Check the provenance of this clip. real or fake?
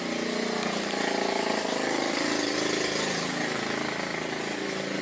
real